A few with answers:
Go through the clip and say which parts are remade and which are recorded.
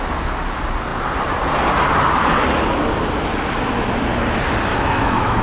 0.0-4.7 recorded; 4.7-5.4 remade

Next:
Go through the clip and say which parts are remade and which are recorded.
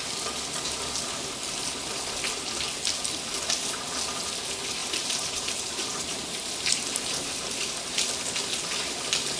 0.0-4.8 recorded; 4.8-8.1 remade; 8.1-9.4 recorded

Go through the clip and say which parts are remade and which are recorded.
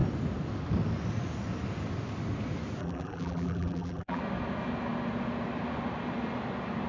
0.0-2.8 recorded; 2.8-4.2 remade; 4.2-6.9 recorded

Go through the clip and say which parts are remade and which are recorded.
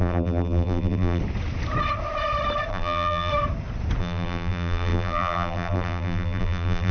0.0-1.2 remade; 1.2-2.7 recorded; 2.7-3.3 remade; 3.3-4.0 recorded; 4.0-6.9 remade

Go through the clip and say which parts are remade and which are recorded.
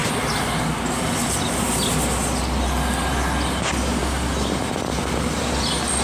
0.0-6.0 recorded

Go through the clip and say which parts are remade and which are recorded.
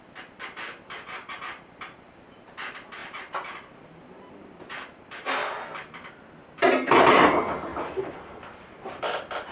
0.0-9.5 recorded